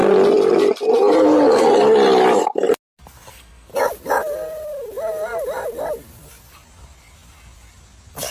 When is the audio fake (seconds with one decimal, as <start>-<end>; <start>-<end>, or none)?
3.3-3.7